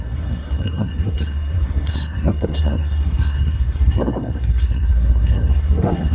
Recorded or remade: remade